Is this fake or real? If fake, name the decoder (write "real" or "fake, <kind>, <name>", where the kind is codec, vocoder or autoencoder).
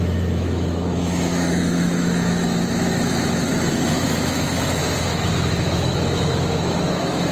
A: fake, autoencoder, DAC-VAE